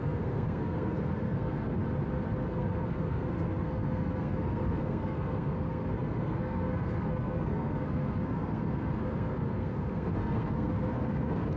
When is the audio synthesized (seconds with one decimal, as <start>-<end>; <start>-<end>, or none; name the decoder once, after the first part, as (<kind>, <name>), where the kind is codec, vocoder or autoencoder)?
0.0-1.8 (codec, SNAC); 2.5-11.6